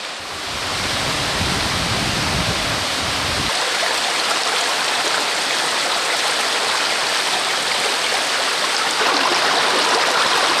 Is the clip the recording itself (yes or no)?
yes